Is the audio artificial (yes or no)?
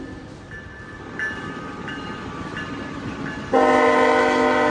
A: no